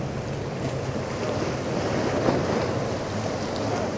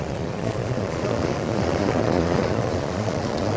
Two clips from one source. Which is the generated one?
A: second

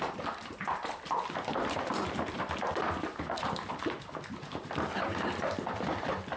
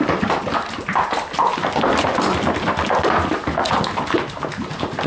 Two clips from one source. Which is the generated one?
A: first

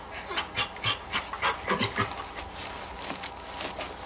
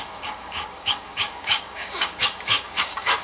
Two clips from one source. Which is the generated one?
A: second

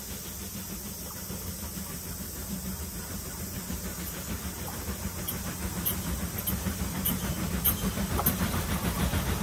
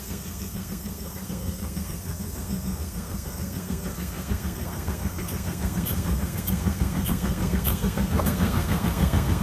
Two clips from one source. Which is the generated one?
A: second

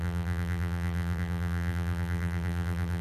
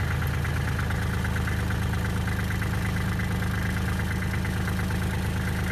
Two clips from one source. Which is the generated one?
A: first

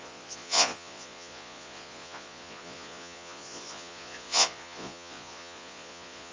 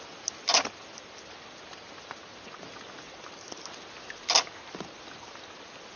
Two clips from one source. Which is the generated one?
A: first